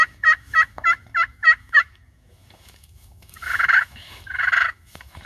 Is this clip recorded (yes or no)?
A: no